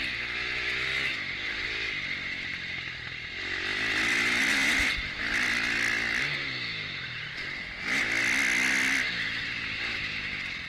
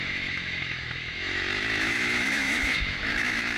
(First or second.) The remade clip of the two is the second